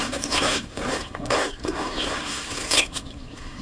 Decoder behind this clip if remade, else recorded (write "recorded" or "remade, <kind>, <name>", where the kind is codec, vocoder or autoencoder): remade, codec, SNAC